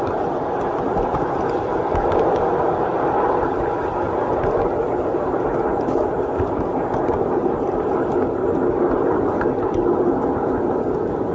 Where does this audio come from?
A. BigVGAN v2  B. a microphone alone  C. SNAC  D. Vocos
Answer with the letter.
B